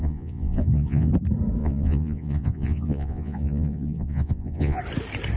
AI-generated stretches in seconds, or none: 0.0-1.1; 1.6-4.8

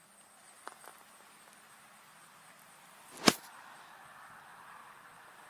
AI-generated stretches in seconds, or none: none

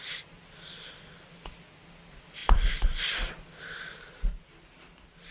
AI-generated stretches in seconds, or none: none

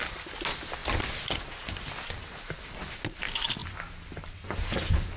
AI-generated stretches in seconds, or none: none

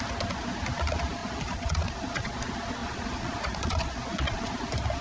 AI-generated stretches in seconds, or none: 1.2-2.4; 2.8-4.5

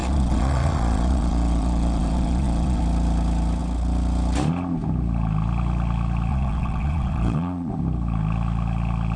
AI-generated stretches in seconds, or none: 0.0-2.8; 6.3-7.7